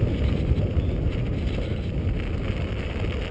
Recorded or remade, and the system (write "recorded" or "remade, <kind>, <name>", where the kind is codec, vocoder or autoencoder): recorded